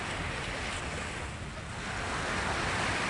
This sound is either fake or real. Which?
real